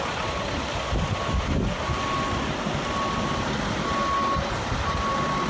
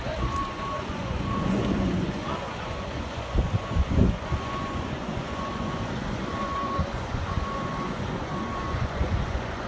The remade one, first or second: second